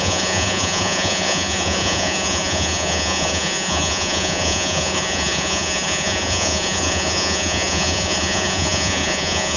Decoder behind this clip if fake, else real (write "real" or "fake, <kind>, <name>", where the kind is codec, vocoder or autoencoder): fake, vocoder, Vocos